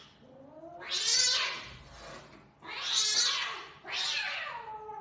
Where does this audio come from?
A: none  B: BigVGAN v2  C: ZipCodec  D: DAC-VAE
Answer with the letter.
A